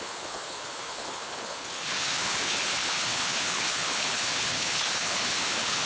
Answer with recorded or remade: remade